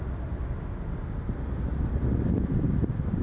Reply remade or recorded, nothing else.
recorded